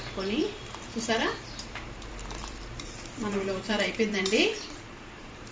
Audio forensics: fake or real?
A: fake